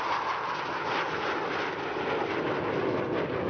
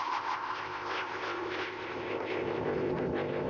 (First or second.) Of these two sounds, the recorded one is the first